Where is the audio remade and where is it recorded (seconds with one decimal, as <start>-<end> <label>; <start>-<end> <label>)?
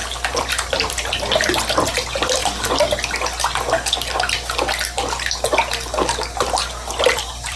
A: 0.0-2.4 remade; 2.4-7.0 recorded; 7.0-7.6 remade